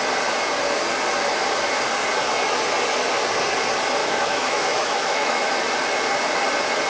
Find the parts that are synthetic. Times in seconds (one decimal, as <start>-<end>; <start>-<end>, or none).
4.0-5.5